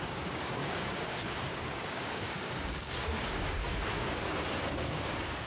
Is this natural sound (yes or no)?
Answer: no